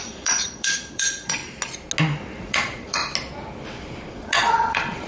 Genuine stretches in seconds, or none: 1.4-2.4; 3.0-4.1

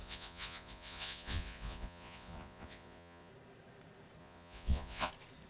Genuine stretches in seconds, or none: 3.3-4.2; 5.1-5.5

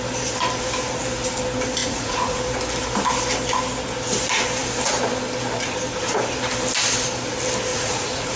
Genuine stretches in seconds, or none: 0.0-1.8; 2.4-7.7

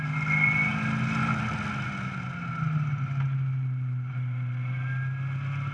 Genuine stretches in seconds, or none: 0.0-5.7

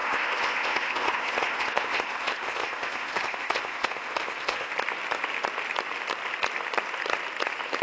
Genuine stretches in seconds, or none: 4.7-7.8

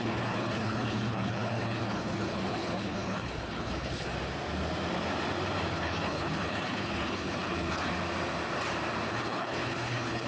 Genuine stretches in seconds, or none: 4.1-5.7; 7.9-9.1